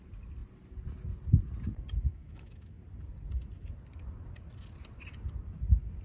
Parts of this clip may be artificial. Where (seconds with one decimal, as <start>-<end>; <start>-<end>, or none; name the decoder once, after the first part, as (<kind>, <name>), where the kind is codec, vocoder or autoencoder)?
2.1-2.8 (autoencoder, DAC-VAE)